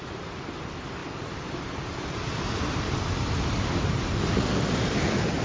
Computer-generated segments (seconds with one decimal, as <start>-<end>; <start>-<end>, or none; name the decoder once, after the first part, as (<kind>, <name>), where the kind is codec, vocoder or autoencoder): none

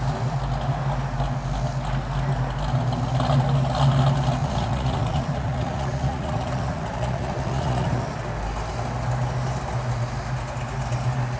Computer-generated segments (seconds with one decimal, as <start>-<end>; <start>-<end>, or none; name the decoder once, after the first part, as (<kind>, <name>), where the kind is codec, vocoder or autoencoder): 4.4-8.0 (vocoder, Vocos)

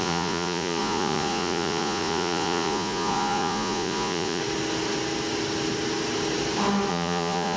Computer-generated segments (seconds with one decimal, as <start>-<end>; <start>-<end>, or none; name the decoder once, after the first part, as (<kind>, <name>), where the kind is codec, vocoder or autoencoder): 0.0-4.4 (vocoder, Vocos); 6.9-7.6